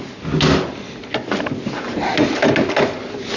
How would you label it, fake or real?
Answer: real